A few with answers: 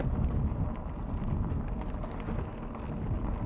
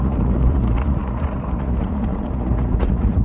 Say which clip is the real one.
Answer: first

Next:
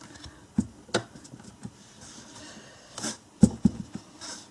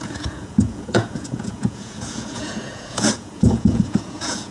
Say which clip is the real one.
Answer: first